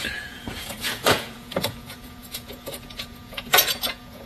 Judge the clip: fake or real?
fake